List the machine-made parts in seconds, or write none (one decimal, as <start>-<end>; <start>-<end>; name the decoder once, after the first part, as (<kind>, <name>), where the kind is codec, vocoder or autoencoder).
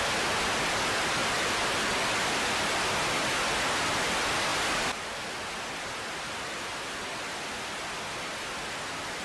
none